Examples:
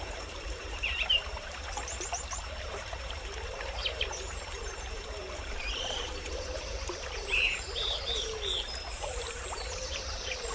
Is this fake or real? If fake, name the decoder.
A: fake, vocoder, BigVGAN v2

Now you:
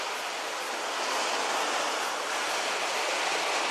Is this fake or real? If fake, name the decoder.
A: real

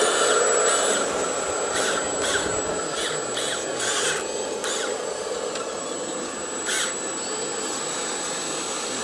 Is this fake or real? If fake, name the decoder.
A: real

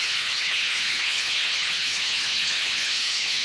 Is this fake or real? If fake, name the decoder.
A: fake, codec, HILCodec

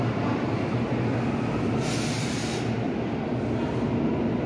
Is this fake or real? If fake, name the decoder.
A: real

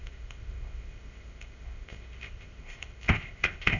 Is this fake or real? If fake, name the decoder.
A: fake, codec, ZipCodec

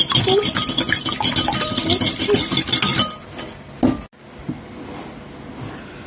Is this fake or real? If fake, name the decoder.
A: real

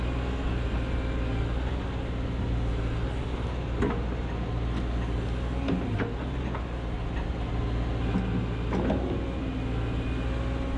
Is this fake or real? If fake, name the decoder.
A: real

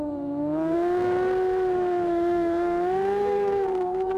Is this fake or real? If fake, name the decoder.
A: fake, codec, SNAC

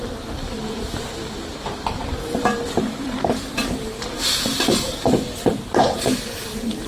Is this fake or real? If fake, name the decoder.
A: fake, vocoder, BigVGAN v2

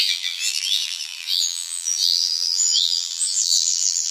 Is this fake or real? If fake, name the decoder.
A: fake, vocoder, BigVGAN v2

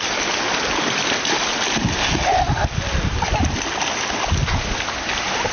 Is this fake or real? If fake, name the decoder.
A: real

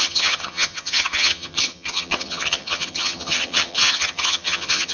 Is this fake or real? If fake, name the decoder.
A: fake, vocoder, HiFi-GAN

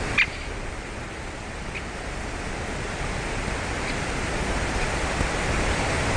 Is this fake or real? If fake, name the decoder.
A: real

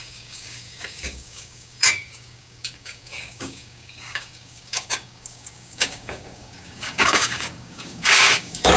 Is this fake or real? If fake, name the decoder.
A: fake, codec, DAC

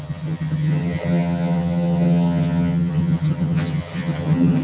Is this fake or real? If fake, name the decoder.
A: fake, vocoder, HiFi-GAN